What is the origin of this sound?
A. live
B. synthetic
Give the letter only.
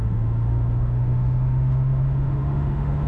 B